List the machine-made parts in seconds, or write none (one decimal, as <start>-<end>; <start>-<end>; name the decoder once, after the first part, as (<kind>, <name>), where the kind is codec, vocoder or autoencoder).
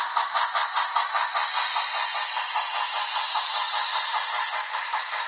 none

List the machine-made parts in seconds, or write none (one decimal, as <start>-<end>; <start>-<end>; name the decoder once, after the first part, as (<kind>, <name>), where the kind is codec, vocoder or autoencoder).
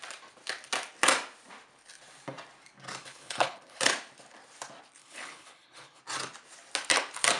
3.0-3.8 (codec, HILCodec); 5.0-6.0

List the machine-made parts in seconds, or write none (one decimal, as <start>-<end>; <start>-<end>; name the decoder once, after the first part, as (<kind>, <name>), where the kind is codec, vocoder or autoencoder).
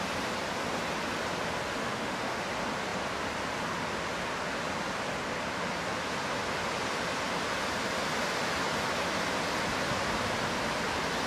1.8-2.4 (autoencoder, DAC-VAE)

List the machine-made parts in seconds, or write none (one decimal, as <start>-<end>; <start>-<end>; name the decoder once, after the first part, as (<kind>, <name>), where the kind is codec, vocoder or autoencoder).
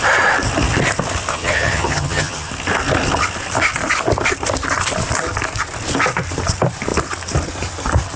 1.3-2.5 (vocoder, HiFi-GAN)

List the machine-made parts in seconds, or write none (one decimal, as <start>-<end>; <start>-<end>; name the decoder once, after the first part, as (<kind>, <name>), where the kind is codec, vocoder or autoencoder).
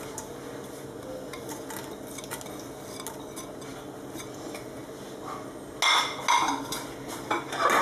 none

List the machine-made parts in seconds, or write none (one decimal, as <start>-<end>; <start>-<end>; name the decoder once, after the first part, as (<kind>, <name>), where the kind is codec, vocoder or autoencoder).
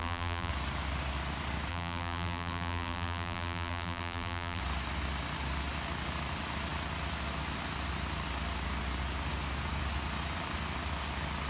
0.0-0.5 (vocoder, BigVGAN v2); 1.7-4.6